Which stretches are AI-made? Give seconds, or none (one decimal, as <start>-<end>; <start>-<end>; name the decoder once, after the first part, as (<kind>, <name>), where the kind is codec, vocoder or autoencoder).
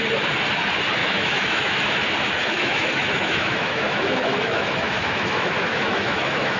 1.0-2.0 (autoencoder, DAC-VAE); 2.4-6.6